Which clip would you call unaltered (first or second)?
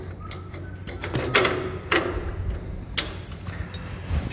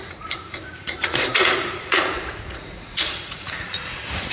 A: first